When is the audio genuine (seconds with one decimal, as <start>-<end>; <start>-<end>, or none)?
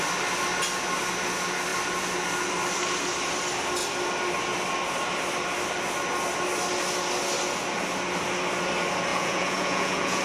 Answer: 0.0-9.1